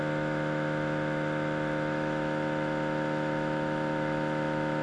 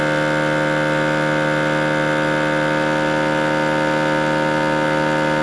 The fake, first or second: first